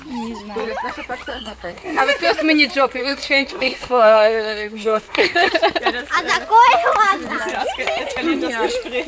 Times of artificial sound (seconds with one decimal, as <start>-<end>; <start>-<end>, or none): 1.3-2.0; 3.0-5.5